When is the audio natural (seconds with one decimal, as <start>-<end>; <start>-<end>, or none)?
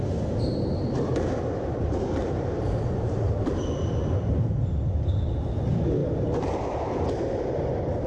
0.0-2.2; 3.5-8.1